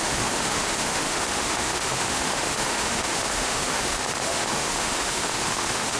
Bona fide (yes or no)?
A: no